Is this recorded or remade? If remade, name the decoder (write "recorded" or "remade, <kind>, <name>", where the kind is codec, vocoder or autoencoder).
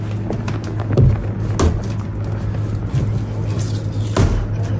recorded